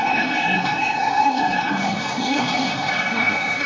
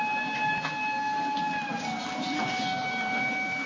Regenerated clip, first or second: first